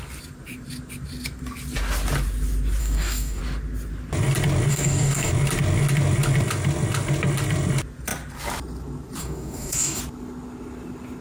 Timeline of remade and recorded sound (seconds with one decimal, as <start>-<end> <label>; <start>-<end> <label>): 0.0-2.8 recorded; 2.8-3.4 remade; 3.4-4.7 recorded; 4.7-5.3 remade; 5.3-9.2 recorded; 9.2-10.0 remade; 10.0-11.2 recorded

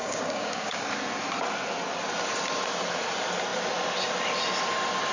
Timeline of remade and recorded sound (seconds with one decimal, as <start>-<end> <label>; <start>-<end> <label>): 0.0-0.8 remade; 0.8-5.1 recorded

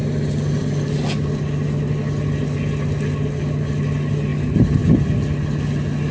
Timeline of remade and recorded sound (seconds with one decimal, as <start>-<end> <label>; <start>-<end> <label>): 0.0-6.1 recorded

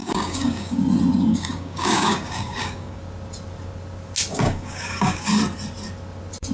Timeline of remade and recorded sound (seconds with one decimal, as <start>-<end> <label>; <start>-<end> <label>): 0.0-0.8 remade; 0.8-1.3 recorded; 1.3-3.0 remade; 3.0-4.3 recorded; 4.3-5.3 remade; 5.3-6.5 recorded

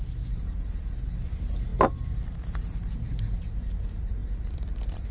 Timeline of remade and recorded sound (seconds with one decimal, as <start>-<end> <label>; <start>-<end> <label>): 0.0-5.1 recorded

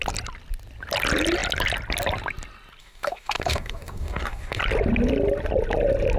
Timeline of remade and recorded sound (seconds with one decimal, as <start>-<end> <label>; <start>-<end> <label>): 0.0-2.8 recorded; 2.8-4.6 remade; 4.6-6.2 recorded